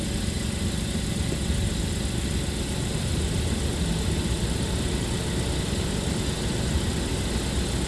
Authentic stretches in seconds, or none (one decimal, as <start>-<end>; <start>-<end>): 0.0-7.9